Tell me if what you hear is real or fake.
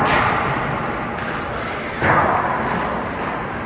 real